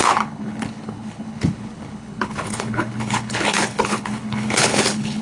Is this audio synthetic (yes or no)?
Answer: yes